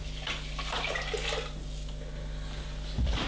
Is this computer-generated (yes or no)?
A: no